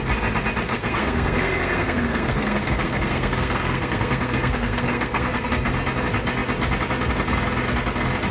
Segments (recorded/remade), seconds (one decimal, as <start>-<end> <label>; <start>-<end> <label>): 0.0-0.7 recorded; 0.7-5.7 remade; 5.7-8.3 recorded